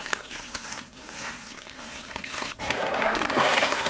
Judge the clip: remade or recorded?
remade